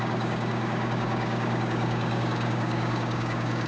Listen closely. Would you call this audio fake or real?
fake